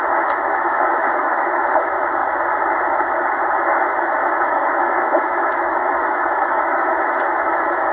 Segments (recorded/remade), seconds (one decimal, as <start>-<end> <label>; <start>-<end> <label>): 0.0-2.2 remade; 2.2-4.4 recorded; 4.4-7.9 remade